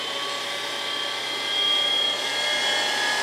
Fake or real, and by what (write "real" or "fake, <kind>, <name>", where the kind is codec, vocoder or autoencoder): real